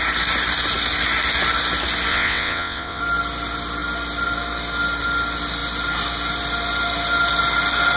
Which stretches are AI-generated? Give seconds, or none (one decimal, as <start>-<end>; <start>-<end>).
2.1-3.0